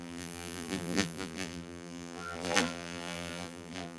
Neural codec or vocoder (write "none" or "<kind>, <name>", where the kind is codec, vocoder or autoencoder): vocoder, BigVGAN v2